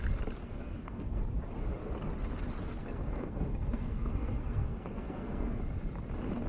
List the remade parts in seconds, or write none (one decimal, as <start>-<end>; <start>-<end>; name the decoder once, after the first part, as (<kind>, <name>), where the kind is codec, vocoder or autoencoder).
0.4-1.2 (codec, SNAC); 2.8-5.6